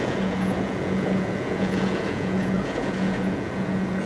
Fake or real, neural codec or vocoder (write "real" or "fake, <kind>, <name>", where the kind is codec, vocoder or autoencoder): fake, vocoder, Vocos